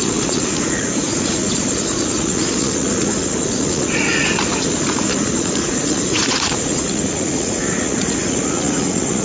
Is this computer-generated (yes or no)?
yes